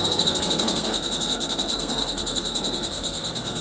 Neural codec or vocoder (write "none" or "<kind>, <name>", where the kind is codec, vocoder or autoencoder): codec, SNAC